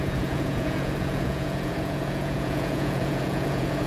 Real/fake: fake